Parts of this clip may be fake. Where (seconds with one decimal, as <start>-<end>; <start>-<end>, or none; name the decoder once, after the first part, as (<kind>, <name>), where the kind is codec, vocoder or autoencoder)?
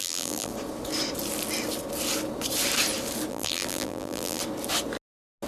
0.0-0.5 (vocoder, BigVGAN v2); 3.3-4.4